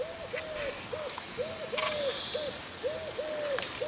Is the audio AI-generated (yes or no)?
no